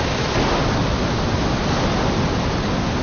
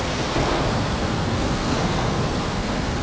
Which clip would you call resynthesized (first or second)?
second